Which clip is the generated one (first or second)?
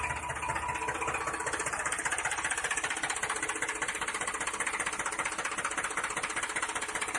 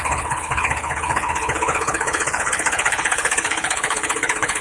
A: second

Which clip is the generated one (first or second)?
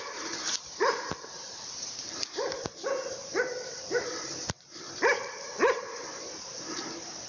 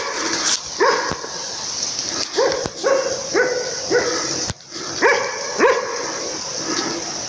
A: first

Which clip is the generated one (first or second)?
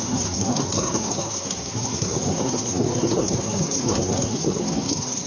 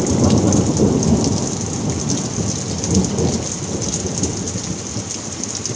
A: first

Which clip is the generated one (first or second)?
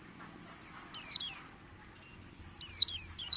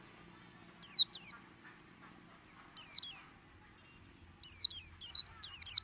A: first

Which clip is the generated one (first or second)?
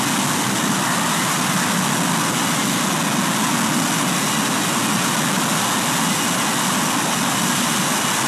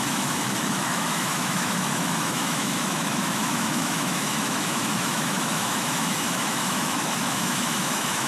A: second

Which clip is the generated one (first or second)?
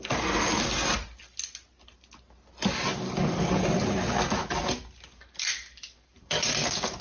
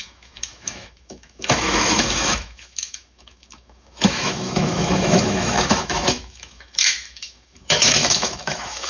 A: second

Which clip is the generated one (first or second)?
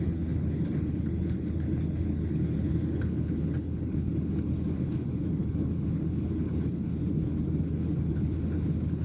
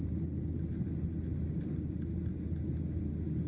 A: first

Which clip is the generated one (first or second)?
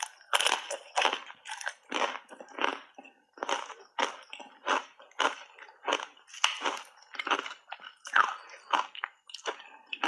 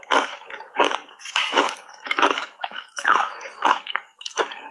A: second